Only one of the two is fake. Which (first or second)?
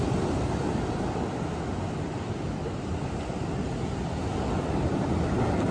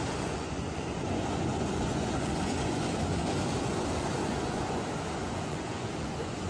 second